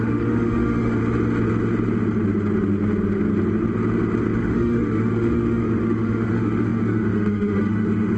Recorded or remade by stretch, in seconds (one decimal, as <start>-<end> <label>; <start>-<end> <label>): 0.0-1.0 remade; 1.0-4.4 recorded; 4.4-8.2 remade